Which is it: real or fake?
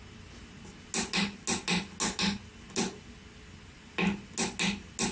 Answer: real